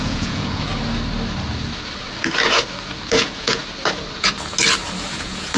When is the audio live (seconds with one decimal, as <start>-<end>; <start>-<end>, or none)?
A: 0.7-3.2; 3.6-5.1